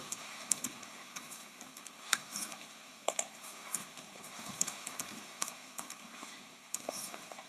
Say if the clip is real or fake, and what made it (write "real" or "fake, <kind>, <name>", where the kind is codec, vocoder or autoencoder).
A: fake, codec, SNAC